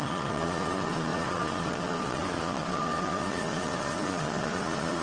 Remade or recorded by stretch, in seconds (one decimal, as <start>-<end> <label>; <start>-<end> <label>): 0.0-5.0 remade